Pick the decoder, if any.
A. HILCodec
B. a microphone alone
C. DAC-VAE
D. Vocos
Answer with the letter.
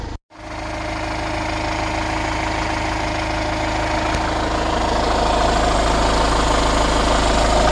B